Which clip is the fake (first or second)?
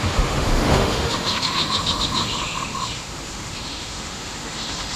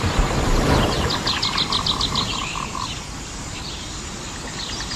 first